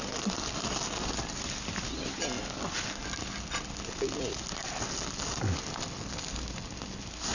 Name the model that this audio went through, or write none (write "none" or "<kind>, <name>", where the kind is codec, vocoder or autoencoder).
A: none